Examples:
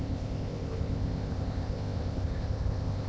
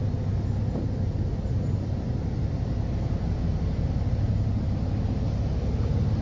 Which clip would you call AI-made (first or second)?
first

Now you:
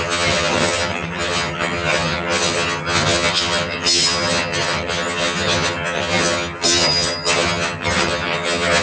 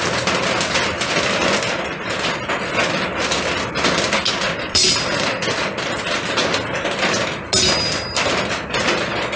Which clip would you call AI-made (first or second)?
first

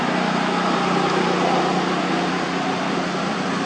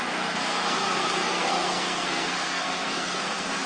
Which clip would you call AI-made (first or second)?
second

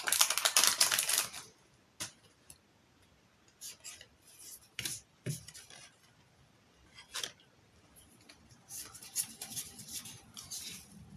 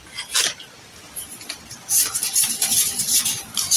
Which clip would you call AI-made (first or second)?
first